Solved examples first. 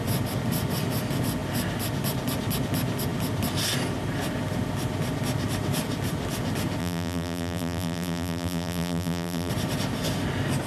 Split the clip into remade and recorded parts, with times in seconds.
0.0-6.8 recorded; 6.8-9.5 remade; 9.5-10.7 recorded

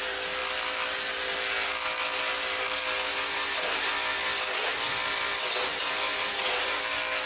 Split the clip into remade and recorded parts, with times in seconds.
0.0-5.7 recorded; 5.7-6.8 remade; 6.8-7.3 recorded